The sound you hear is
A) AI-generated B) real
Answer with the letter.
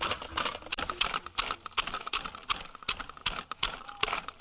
B